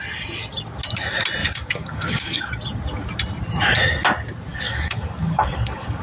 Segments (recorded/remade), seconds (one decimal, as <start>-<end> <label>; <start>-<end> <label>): 0.0-1.4 recorded; 1.4-2.5 remade; 2.5-4.5 recorded; 4.5-6.0 remade